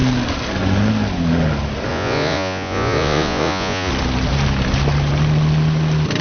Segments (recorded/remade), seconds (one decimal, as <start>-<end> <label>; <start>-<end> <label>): 0.0-1.9 recorded; 1.9-3.9 remade; 3.9-6.2 recorded